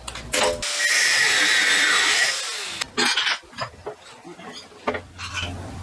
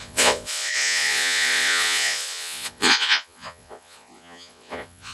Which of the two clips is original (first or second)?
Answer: first